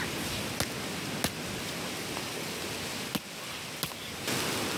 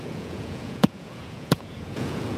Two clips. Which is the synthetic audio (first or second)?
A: second